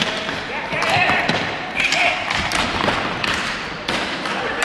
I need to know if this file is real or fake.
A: fake